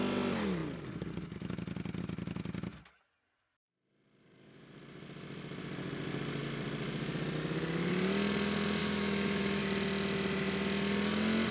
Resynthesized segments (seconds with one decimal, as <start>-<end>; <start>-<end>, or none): 8.8-9.6